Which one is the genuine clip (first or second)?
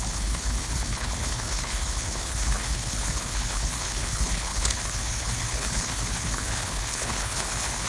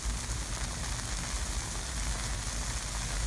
second